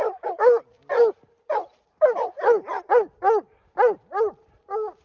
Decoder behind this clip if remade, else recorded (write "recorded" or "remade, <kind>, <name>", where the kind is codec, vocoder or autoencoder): recorded